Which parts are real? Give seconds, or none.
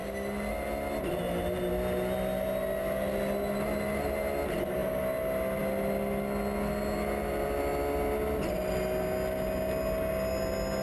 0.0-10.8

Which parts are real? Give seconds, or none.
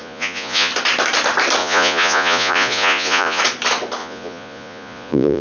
0.7-1.6; 3.4-4.0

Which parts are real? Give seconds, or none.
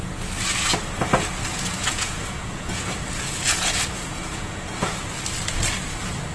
0.0-1.5; 5.1-6.3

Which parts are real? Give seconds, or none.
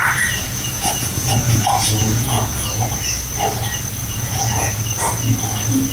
0.0-0.4; 2.8-4.0; 4.8-5.9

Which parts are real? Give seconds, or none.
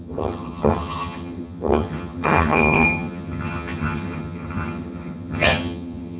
none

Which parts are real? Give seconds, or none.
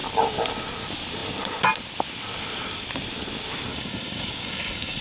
0.0-3.7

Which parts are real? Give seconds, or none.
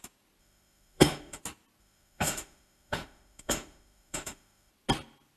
0.0-0.4; 1.4-1.8; 4.7-5.4